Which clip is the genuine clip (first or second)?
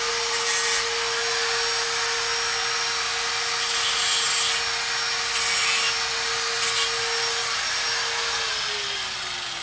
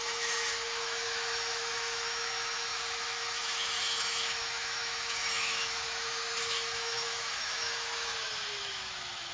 first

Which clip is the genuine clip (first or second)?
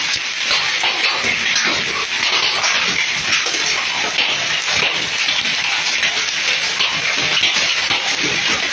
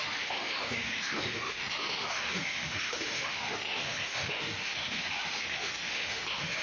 first